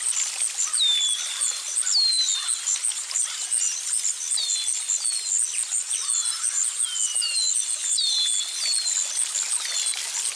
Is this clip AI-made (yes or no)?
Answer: no